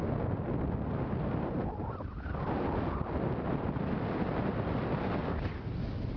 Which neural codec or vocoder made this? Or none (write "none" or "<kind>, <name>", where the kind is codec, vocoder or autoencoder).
none